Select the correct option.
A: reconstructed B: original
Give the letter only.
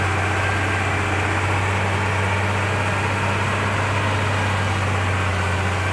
B